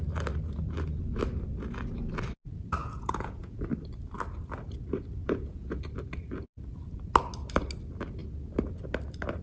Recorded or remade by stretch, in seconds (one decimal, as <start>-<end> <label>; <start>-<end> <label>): 0.0-2.8 recorded; 2.8-3.6 remade; 3.6-5.2 recorded; 5.2-5.8 remade; 5.8-9.4 recorded